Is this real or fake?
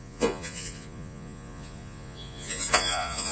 fake